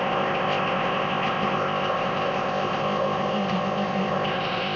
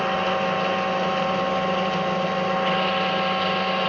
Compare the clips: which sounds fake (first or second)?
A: first